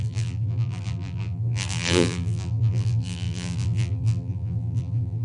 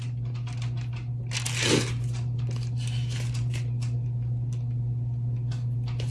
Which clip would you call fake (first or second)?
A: first